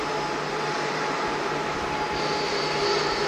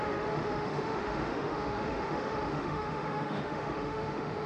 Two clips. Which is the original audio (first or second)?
first